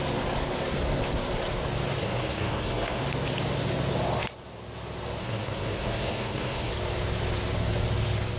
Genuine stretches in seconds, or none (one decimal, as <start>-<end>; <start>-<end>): 0.0-2.0; 3.0-5.2; 6.7-8.4